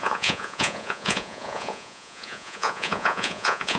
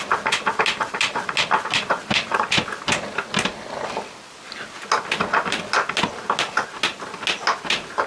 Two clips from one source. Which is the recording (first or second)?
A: second